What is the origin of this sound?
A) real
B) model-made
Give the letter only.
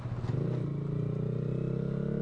A